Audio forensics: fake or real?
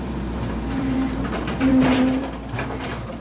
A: fake